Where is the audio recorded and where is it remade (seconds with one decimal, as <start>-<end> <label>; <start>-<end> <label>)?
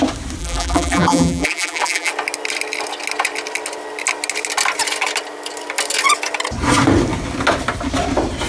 0.0-0.4 recorded; 0.4-2.1 remade; 2.1-8.5 recorded